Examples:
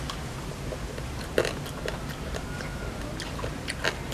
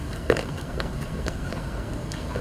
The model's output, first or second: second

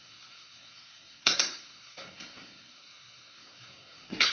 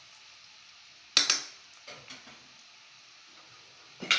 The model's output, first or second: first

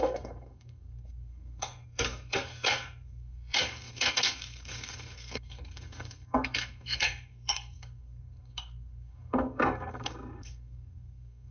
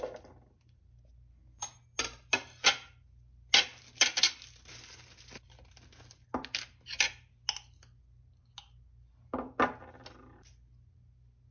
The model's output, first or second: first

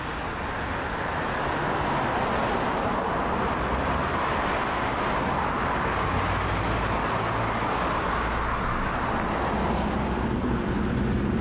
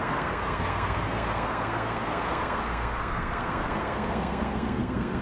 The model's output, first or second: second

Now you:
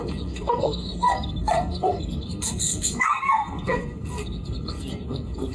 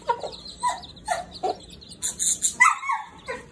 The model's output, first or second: first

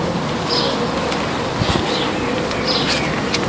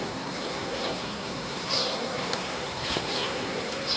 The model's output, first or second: second